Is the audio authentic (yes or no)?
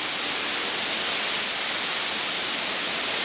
yes